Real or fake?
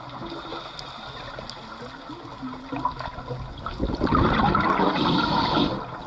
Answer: real